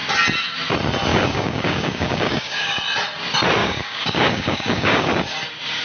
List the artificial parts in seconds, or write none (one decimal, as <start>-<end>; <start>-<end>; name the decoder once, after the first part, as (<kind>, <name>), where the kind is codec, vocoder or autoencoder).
1.1-2.8 (codec, DAC); 3.6-5.1